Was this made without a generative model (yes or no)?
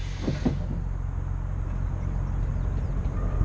yes